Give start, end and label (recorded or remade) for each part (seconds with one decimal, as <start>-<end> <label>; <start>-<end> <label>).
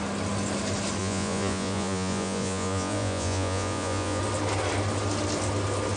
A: 0.0-1.0 recorded; 1.0-4.2 remade; 4.2-6.0 recorded